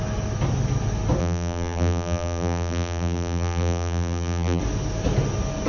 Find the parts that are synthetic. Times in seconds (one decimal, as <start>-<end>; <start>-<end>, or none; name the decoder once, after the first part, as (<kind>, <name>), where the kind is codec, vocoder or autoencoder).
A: 1.2-4.6 (vocoder, BigVGAN v2)